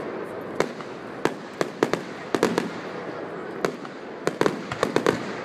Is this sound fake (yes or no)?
no